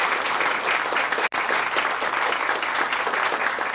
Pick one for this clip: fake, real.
real